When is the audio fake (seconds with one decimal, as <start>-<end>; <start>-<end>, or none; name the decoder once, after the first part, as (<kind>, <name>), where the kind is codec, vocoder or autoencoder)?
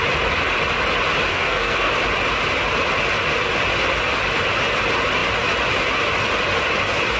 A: 1.3-1.9 (codec, SNAC)